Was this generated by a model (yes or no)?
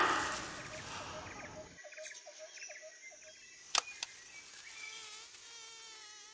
no